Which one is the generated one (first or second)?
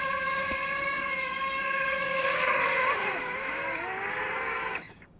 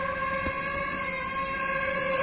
first